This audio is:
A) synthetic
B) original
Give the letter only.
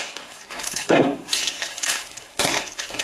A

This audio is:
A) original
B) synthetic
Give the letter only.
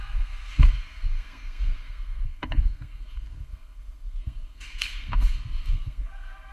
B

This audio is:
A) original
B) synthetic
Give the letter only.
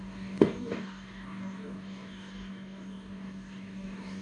B